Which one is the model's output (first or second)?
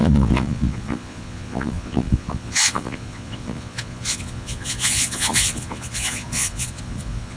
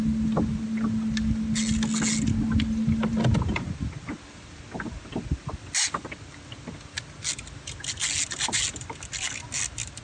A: first